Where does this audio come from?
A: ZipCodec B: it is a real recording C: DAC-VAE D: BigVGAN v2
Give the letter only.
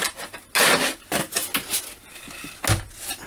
B